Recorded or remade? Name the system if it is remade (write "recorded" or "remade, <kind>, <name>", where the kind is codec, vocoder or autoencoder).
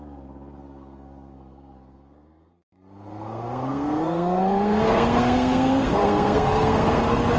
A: remade, codec, SNAC